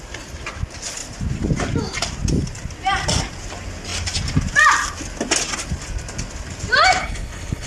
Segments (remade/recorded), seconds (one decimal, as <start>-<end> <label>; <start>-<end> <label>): 0.0-7.0 recorded; 7.0-7.7 remade